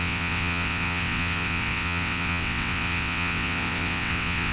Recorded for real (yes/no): no